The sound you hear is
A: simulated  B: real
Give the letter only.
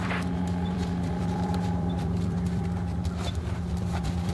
A